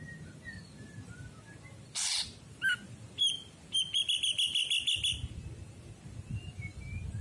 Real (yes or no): yes